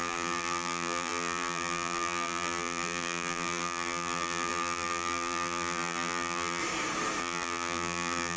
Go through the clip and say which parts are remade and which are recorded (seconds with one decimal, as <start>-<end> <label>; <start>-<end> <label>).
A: 0.0-6.6 remade; 6.6-7.2 recorded; 7.2-8.4 remade